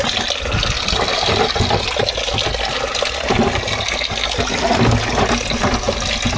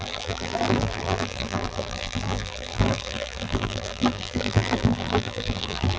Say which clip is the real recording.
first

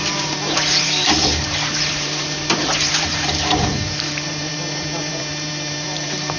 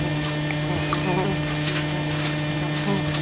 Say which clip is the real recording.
second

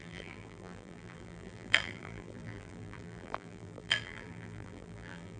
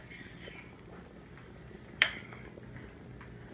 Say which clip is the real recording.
second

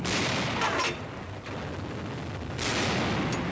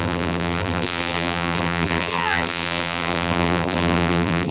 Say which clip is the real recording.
first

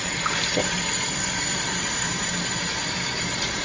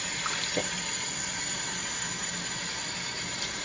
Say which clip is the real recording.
second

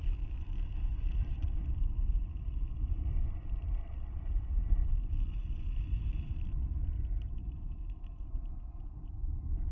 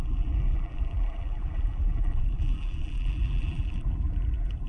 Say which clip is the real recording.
first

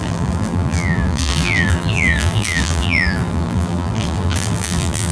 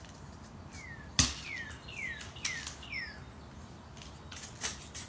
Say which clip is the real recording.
second